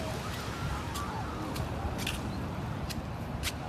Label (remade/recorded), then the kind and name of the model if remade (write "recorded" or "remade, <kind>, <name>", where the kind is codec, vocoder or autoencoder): recorded